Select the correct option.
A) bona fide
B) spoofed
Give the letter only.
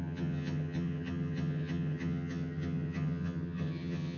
B